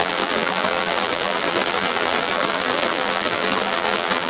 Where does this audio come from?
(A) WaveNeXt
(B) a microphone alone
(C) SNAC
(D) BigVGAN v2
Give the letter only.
D